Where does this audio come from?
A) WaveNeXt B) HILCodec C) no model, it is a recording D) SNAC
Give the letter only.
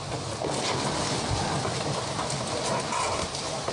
C